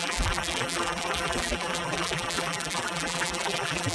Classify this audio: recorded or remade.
remade